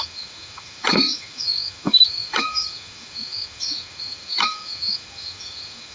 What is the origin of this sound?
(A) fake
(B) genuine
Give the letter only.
A